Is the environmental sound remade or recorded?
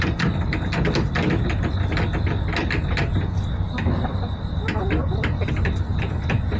recorded